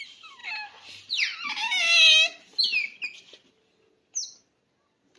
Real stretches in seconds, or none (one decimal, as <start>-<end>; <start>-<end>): 0.0-5.2